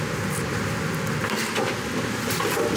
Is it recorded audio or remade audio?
recorded